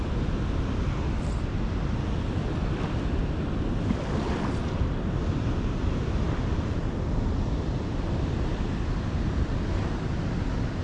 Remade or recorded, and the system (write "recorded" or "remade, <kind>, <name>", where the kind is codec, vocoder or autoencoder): recorded